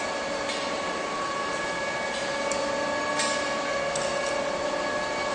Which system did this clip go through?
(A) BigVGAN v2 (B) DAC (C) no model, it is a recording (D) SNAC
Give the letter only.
C